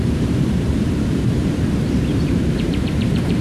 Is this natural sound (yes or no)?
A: no